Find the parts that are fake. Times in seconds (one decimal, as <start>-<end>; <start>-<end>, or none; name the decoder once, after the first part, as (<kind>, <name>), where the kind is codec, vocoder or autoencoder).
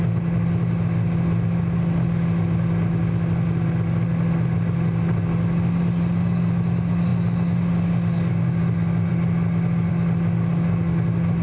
none